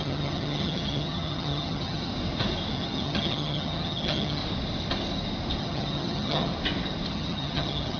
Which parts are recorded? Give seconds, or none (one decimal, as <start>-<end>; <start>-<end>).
2.1-2.7; 4.4-5.6; 6.5-7.1

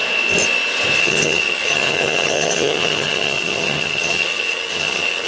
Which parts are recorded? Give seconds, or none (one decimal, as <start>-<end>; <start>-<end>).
0.0-1.0

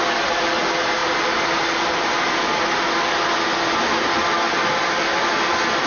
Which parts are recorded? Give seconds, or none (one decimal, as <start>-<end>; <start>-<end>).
0.0-5.9

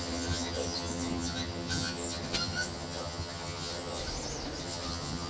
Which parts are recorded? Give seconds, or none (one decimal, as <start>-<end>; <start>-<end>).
4.0-4.6

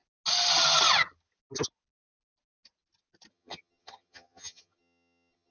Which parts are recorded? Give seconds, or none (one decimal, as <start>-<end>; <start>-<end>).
0.0-3.3

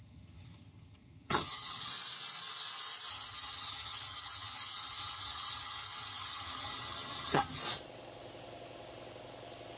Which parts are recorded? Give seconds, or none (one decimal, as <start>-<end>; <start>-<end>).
1.9-3.1; 7.6-9.8

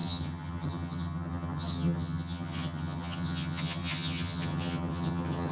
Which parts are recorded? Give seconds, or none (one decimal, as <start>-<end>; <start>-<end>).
none